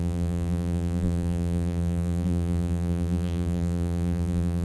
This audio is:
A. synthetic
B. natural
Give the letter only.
A